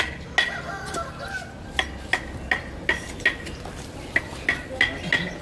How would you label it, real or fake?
real